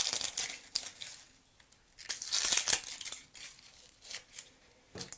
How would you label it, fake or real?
real